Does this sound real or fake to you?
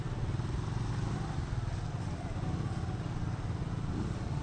real